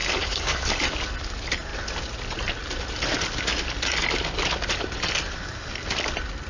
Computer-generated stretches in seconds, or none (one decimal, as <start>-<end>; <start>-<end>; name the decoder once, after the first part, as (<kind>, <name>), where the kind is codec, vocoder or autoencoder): 0.0-0.7 (codec, DAC)